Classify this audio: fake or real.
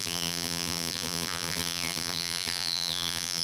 fake